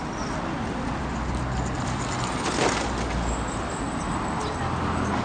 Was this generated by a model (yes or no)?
no